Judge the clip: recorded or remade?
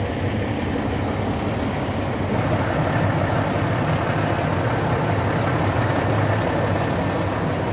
recorded